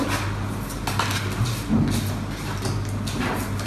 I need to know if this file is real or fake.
real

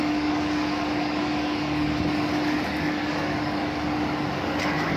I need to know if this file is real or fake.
fake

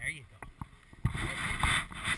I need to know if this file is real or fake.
real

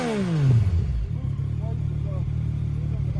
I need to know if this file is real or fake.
real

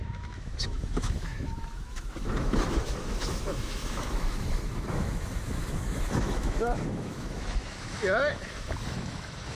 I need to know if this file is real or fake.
fake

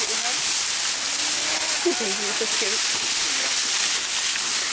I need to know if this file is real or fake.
real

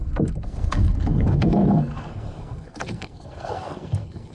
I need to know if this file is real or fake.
fake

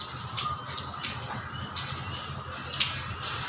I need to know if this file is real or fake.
real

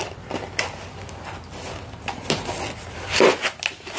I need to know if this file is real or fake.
real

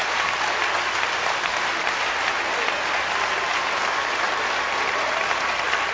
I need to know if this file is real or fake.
real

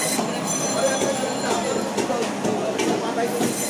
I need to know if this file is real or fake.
real